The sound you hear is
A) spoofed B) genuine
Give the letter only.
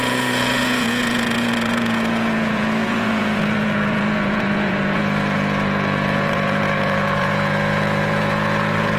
A